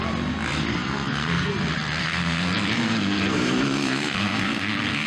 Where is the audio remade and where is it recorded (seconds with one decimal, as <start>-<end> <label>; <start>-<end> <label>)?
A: 0.0-0.7 recorded; 0.7-1.5 remade; 1.5-2.0 recorded; 2.0-5.1 remade

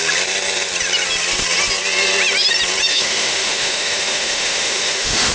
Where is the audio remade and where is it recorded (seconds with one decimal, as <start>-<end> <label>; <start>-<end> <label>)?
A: 0.0-2.9 recorded; 2.9-5.3 remade

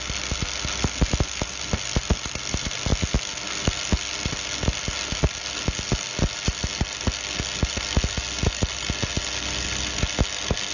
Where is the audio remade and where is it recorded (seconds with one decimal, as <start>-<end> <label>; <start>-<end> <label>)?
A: 0.0-10.7 recorded

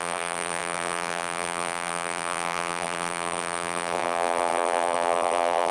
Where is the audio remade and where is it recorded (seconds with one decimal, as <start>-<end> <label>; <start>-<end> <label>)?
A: 0.0-5.7 remade

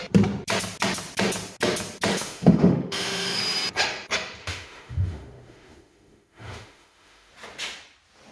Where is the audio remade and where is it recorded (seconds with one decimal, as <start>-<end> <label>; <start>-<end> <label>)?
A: 0.0-2.1 recorded; 2.1-3.4 remade; 3.4-4.4 recorded; 4.4-7.3 remade; 7.3-8.3 recorded

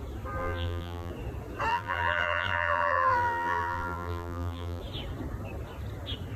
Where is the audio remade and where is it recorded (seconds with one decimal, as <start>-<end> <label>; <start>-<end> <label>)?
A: 0.0-0.4 recorded; 0.4-1.1 remade; 1.1-1.7 recorded; 1.7-4.8 remade; 4.8-6.4 recorded